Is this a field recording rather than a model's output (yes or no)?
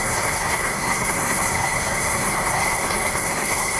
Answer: no